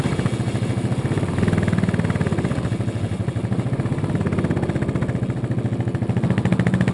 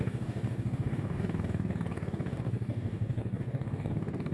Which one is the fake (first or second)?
second